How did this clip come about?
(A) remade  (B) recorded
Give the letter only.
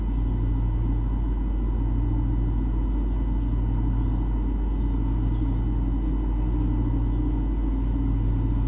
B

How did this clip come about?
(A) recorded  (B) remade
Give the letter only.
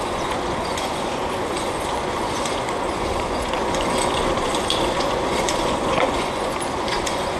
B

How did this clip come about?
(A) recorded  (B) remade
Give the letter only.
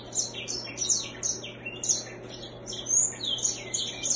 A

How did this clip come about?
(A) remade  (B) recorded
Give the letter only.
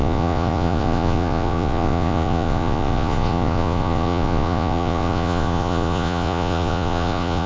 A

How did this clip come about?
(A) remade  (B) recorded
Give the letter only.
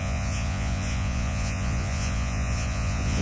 A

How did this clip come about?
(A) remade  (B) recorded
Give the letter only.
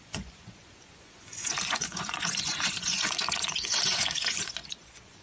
A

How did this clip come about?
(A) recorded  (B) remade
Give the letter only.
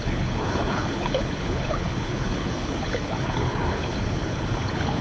B